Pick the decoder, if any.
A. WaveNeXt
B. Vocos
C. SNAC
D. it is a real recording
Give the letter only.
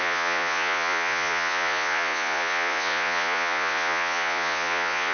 B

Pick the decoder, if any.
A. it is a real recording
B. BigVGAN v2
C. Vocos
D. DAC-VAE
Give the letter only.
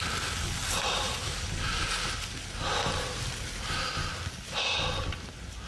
A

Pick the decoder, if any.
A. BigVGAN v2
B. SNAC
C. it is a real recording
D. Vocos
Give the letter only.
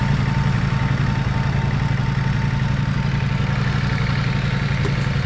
C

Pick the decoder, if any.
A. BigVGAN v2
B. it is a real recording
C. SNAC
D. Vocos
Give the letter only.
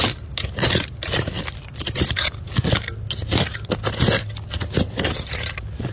B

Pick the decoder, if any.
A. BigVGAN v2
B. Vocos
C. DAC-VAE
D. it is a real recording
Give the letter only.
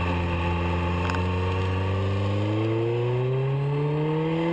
D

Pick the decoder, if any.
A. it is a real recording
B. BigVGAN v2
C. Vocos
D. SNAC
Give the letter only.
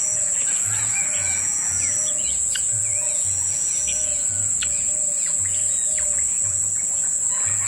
C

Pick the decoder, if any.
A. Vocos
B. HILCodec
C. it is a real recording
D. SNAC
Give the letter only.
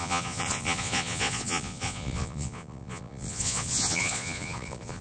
A